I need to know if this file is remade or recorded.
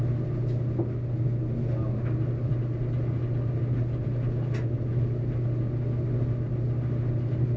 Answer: recorded